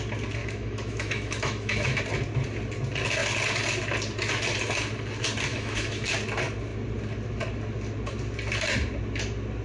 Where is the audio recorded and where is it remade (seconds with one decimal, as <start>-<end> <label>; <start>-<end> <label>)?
0.0-0.4 recorded; 0.4-2.0 remade; 2.0-5.5 recorded; 5.5-6.1 remade; 6.1-9.6 recorded

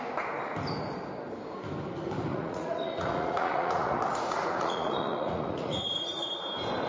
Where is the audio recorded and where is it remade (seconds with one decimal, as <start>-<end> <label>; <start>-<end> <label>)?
0.0-2.3 recorded; 2.3-6.4 remade; 6.4-6.9 recorded